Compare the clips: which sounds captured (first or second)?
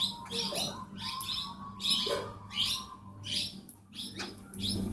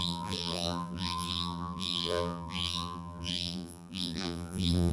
first